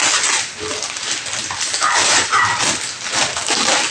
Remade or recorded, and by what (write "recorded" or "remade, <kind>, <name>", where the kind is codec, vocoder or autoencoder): recorded